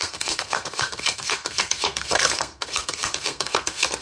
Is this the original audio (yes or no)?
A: no